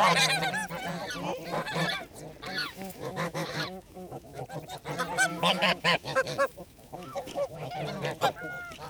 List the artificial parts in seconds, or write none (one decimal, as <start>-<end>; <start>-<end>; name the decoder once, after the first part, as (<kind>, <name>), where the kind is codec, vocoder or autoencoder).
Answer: 2.6-4.4 (autoencoder, DAC-VAE); 5.3-7.7